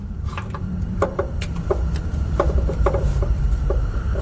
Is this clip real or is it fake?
fake